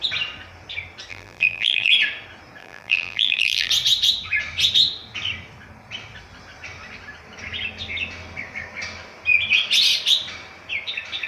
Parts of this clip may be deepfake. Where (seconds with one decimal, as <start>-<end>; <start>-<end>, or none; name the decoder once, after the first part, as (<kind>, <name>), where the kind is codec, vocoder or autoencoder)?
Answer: 1.1-1.9 (vocoder, BigVGAN v2); 2.6-3.7